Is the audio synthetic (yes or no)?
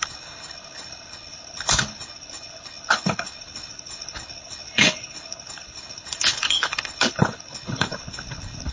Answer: yes